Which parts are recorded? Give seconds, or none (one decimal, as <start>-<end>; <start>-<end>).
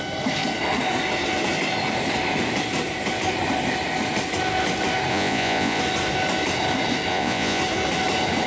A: 0.0-5.1; 5.8-7.1; 7.6-8.5